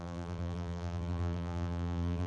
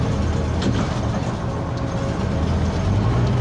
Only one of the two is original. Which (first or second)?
second